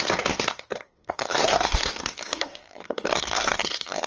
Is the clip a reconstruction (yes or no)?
yes